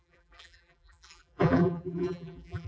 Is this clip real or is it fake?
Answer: fake